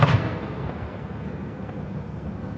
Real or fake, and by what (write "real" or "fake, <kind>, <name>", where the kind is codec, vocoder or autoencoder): fake, codec, SNAC